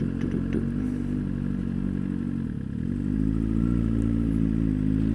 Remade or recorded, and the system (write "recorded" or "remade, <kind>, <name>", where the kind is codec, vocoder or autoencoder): recorded